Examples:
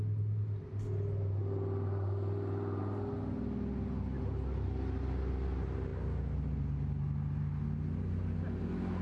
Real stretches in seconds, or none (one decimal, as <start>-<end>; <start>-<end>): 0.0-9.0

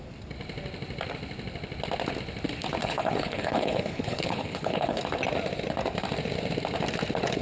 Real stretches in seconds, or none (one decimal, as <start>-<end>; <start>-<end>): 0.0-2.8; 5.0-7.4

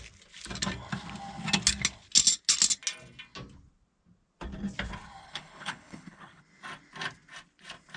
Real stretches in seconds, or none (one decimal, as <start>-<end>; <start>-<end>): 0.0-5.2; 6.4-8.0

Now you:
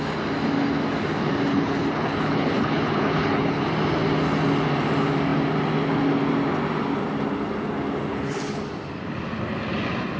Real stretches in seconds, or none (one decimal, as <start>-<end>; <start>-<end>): 0.0-1.5; 3.6-8.1; 8.6-10.2

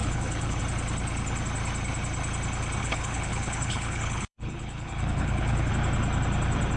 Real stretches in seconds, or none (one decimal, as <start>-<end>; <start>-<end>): 0.6-2.8; 5.7-6.8

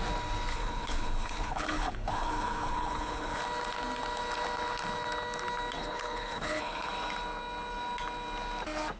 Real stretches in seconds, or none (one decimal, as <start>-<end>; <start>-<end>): 0.0-0.5; 3.4-5.8; 6.9-9.0

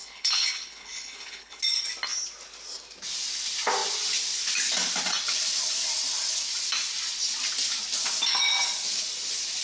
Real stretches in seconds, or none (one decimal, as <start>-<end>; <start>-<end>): 1.6-9.6

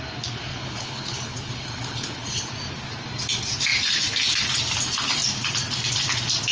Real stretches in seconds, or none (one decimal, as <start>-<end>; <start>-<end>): 0.0-0.5; 2.5-6.5